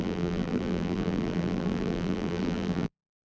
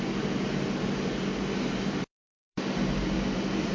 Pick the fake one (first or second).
first